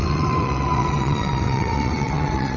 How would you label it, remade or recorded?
remade